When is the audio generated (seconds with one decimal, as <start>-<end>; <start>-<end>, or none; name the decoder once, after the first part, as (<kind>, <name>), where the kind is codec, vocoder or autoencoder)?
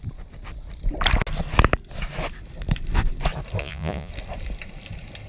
3.6-4.1 (vocoder, Vocos)